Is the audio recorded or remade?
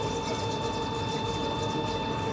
recorded